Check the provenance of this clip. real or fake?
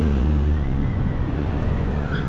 fake